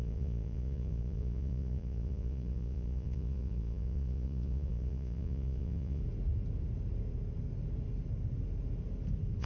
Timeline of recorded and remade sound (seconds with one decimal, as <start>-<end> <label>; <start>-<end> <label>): 0.0-6.0 remade; 6.0-9.4 recorded